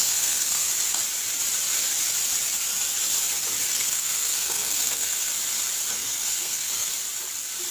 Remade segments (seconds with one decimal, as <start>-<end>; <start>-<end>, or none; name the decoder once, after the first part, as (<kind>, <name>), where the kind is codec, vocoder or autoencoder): 0.0-0.7 (codec, SNAC); 3.7-5.3; 5.9-6.9